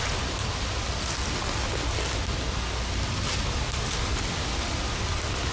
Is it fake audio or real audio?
real